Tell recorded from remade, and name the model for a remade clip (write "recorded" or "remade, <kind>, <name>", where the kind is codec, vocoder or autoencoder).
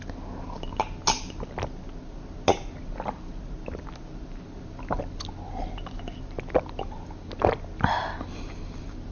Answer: recorded